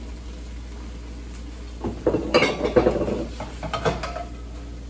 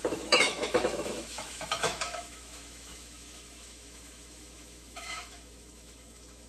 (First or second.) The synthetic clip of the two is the second